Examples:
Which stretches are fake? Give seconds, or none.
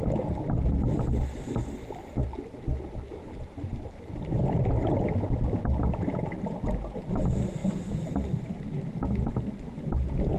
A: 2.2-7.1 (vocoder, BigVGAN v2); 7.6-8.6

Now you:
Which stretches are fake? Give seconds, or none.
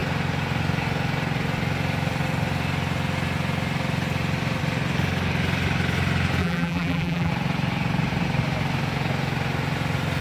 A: 6.4-7.3 (vocoder, BigVGAN v2)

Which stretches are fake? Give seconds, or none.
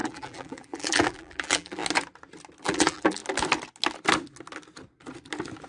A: 0.0-1.8 (vocoder, BigVGAN v2); 2.6-3.2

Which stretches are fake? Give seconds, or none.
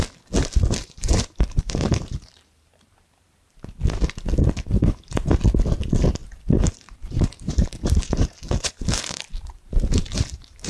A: 0.8-3.8 (vocoder, BigVGAN v2); 4.8-5.3; 6.2-10.7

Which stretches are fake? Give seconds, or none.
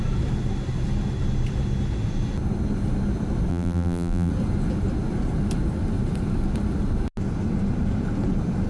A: 3.5-4.3 (vocoder, BigVGAN v2)